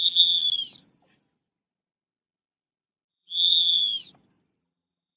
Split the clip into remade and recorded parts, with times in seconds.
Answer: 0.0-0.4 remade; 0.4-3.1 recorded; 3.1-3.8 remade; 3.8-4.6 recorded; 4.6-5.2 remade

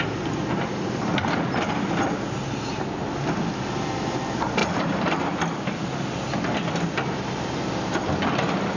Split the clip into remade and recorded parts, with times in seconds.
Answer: 0.0-4.6 recorded; 4.6-5.2 remade; 5.2-8.8 recorded

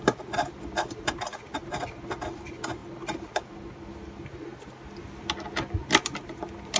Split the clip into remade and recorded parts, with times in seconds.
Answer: 0.0-1.6 remade; 1.6-2.2 recorded; 2.2-2.8 remade; 2.8-3.9 recorded; 3.9-6.8 remade

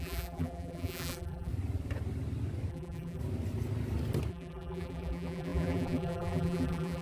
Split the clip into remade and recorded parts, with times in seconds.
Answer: 0.0-1.5 remade; 1.5-2.7 recorded; 2.7-3.2 remade; 3.2-4.3 recorded; 4.3-7.0 remade

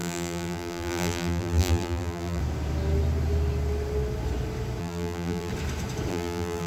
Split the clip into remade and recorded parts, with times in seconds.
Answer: 0.0-2.4 remade; 2.4-4.8 recorded; 4.8-5.5 remade; 5.5-6.1 recorded; 6.1-6.7 remade